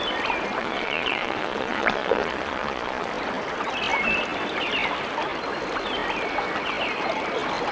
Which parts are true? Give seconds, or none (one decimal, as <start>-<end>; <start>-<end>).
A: 0.0-0.6; 3.1-7.7